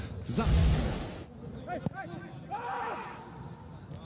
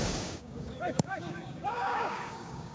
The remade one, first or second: second